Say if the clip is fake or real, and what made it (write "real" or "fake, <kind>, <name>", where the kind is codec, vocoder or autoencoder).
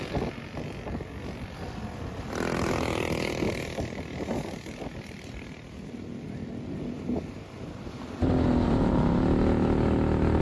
real